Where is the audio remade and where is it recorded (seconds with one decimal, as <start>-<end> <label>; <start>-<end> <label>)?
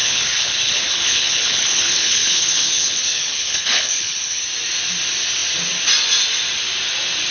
0.0-4.4 remade; 4.4-7.3 recorded